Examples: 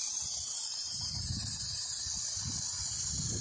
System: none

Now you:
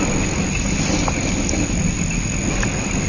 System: none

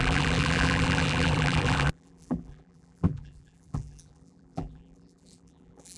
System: vocoder, BigVGAN v2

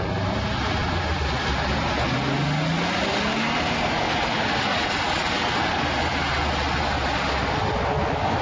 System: none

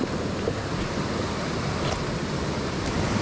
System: none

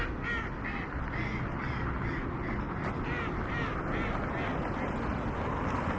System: none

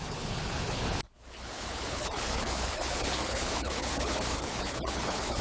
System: codec, HILCodec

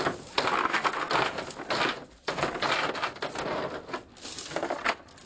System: none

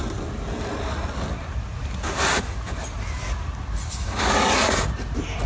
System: none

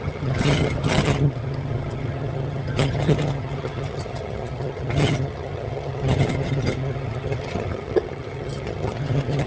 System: vocoder, HiFi-GAN